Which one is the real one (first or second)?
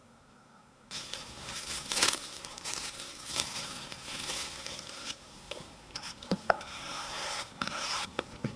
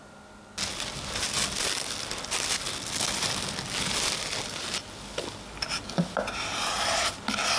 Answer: second